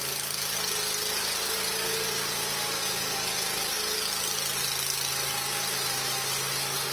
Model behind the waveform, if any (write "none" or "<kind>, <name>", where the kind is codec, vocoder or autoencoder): none